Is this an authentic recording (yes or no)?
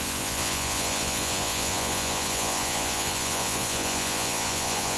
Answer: no